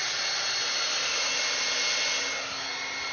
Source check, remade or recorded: recorded